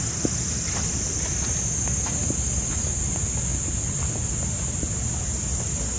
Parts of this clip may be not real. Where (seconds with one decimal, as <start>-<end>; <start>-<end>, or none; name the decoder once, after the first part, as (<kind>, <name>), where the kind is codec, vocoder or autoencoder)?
none